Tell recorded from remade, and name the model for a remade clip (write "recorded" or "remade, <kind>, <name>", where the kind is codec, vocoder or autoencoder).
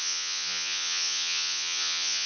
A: remade, vocoder, Vocos